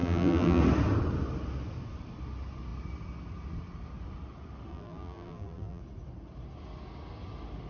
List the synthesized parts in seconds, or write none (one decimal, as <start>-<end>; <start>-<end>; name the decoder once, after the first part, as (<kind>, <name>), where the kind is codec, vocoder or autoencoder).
0.0-0.6 (vocoder, BigVGAN v2); 4.7-5.8